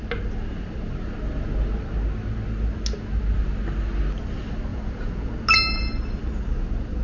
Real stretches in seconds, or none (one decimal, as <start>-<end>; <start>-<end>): 0.0-4.7; 5.3-7.0